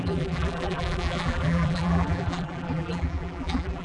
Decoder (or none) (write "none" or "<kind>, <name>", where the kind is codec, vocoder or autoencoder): vocoder, BigVGAN v2